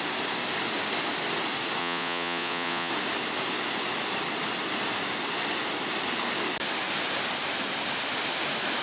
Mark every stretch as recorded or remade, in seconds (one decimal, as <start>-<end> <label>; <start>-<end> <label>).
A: 0.0-1.8 recorded; 1.8-2.9 remade; 2.9-8.8 recorded